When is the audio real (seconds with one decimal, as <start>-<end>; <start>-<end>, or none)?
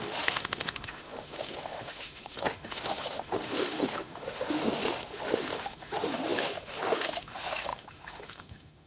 none